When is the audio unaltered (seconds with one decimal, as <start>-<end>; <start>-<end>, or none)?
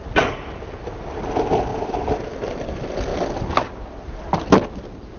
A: 0.0-5.2